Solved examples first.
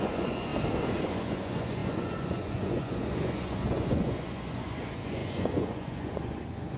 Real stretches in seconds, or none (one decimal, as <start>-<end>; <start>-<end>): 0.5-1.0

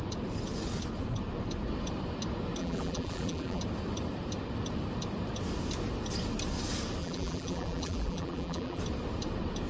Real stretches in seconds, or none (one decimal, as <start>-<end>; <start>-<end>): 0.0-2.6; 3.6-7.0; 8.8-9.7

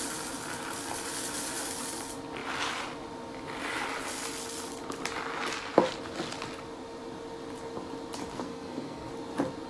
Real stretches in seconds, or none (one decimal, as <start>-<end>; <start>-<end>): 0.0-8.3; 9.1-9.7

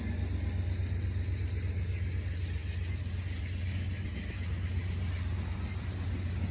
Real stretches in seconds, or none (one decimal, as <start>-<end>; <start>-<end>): 0.0-6.5

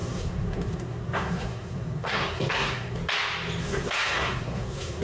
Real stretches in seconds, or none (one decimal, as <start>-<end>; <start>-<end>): 3.0-3.6

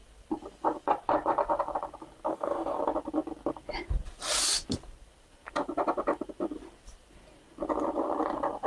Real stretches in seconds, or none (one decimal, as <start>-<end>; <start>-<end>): 0.0-2.3; 2.8-8.7